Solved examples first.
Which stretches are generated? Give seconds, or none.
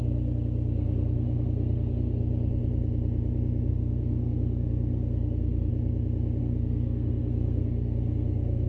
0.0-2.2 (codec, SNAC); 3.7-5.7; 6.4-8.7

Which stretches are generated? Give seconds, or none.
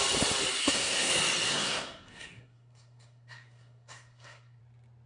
0.6-1.1 (codec, SNAC); 1.5-4.6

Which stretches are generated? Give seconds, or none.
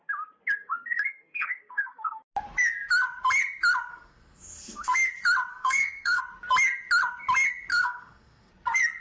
0.6-2.2 (codec, SNAC); 3.9-5.1; 5.5-6.2; 7.7-8.5